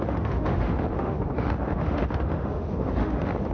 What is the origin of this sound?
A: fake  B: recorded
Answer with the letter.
A